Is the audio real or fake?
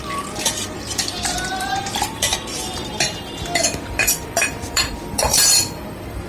fake